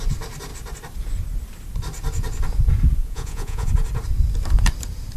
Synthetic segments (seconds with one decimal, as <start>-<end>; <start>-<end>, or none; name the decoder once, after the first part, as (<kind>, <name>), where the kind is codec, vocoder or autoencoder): 3.0-3.7 (vocoder, Vocos)